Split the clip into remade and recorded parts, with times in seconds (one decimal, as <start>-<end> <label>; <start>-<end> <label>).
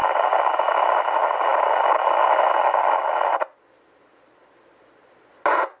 0.0-5.8 recorded